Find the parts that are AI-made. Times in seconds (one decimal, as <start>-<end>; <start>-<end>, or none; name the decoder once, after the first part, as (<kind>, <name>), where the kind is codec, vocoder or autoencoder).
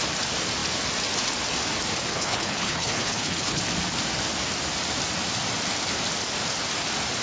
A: 2.1-3.6 (codec, HILCodec)